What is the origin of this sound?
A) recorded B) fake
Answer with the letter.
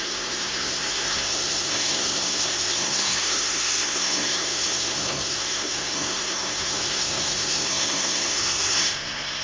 B